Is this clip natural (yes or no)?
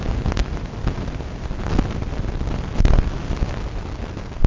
yes